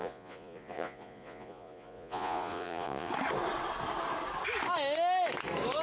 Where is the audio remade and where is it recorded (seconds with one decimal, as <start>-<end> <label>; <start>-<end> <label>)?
0.0-3.1 remade; 3.1-5.8 recorded